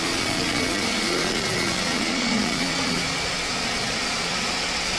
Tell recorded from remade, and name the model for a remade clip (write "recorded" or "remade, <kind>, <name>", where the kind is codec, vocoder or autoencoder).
remade, vocoder, Vocos